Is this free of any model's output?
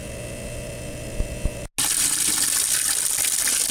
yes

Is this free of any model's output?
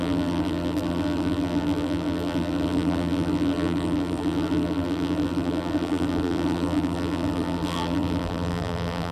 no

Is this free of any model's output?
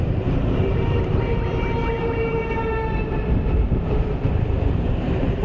no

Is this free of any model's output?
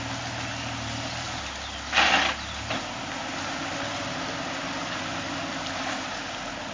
yes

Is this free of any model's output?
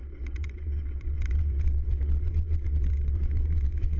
no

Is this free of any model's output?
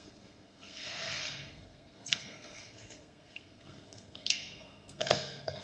no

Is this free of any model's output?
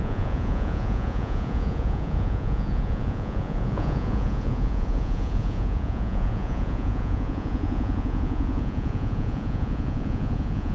no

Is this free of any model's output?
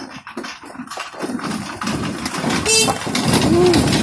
yes